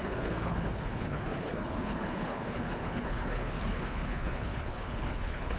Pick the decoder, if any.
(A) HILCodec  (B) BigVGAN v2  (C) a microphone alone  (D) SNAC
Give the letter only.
A